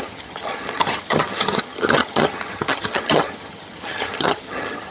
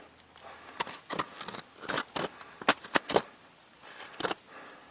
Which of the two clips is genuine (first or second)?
second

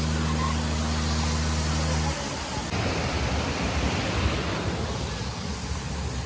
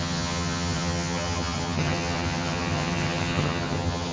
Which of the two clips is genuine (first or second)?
first